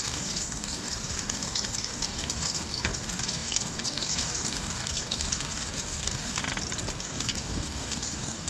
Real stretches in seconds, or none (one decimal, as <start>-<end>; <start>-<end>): 6.4-7.0